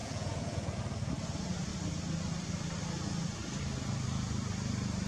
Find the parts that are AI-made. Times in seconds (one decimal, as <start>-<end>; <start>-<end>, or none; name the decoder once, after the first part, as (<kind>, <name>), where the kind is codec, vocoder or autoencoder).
0.0-0.8 (vocoder, Vocos)

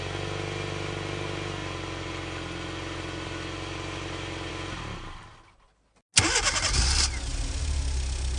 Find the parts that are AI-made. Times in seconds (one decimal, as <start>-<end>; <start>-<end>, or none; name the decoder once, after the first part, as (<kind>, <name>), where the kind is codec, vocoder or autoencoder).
none

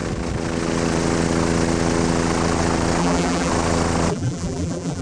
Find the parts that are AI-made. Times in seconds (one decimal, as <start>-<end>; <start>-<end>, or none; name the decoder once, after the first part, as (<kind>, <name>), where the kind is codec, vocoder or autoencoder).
3.0-3.5 (vocoder, BigVGAN v2); 4.1-5.0